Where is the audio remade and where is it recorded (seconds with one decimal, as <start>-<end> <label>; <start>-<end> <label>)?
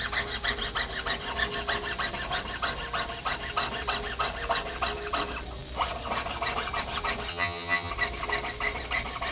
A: 0.0-7.3 recorded; 7.3-7.9 remade; 7.9-9.3 recorded